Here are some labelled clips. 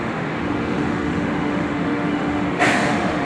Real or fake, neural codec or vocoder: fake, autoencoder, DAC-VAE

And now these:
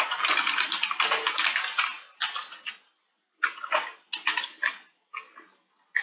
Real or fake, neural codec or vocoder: real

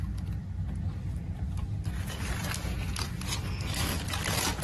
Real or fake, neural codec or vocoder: real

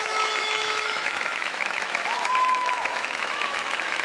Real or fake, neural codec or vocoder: fake, autoencoder, DAC-VAE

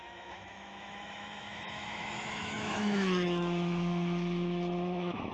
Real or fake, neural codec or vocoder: fake, autoencoder, DAC-VAE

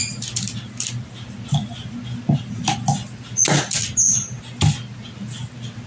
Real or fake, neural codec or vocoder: real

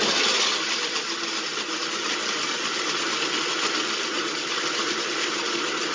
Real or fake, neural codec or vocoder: real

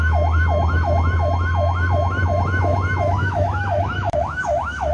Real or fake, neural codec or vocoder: fake, autoencoder, DAC-VAE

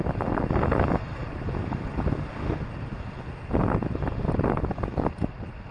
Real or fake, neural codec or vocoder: real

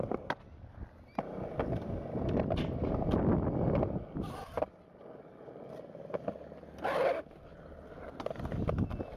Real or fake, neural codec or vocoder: real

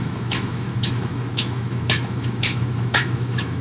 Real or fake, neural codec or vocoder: fake, autoencoder, DAC-VAE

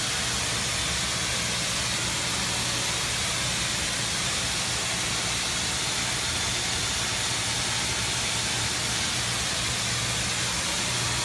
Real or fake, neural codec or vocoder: real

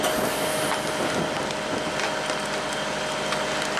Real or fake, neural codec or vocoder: real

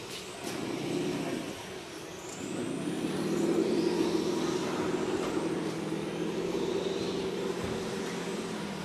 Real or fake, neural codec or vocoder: real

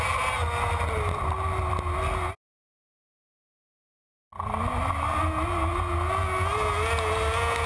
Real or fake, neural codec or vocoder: real